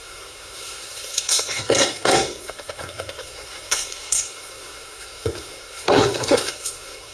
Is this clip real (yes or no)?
no